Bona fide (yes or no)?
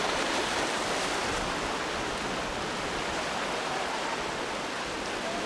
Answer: yes